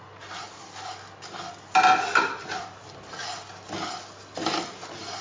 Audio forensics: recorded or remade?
recorded